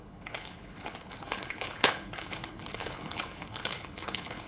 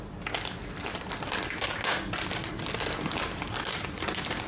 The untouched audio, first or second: second